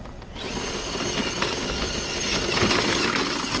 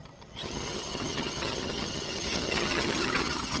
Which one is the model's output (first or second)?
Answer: second